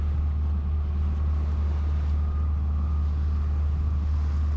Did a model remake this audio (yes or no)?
no